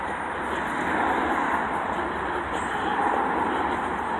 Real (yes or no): yes